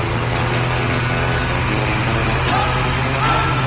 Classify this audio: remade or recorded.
recorded